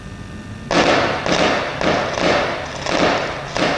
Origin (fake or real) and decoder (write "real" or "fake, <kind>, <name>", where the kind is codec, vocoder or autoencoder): real